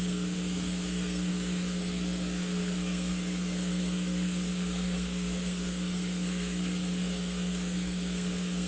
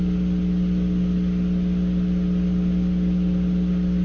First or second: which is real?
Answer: second